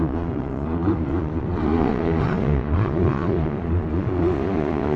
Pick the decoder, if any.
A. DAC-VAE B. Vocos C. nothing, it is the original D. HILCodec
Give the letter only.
B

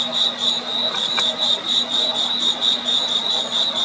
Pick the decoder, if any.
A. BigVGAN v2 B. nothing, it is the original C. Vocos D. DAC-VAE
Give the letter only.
B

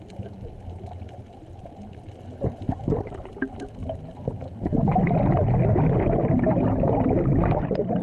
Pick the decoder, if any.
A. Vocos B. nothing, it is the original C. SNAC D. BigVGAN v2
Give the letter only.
B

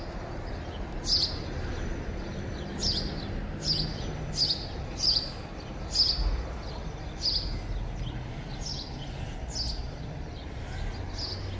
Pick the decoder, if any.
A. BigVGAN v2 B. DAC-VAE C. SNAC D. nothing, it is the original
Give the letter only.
D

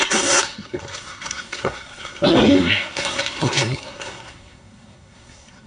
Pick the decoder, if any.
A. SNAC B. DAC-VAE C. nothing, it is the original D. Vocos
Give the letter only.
A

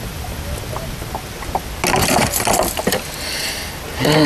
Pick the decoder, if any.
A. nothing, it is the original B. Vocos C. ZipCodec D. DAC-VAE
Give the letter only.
A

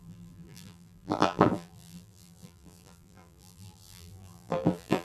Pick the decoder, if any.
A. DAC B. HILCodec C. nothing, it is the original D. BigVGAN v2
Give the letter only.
D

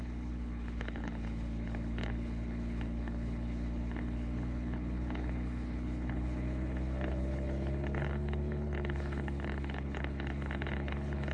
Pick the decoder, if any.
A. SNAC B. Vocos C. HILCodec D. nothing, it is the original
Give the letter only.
C